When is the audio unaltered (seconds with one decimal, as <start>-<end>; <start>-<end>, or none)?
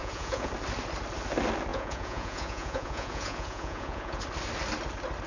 0.5-1.7; 4.2-5.3